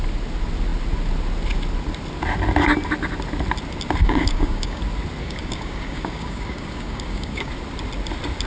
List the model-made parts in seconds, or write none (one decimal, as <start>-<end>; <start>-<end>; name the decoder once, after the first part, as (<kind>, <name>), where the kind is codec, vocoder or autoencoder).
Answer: 4.0-4.8 (codec, DAC); 5.2-7.5